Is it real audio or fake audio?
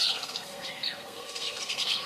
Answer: fake